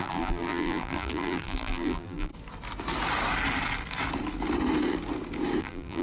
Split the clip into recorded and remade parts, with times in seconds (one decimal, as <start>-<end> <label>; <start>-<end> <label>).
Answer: 0.0-2.3 remade; 2.3-5.6 recorded; 5.6-6.0 remade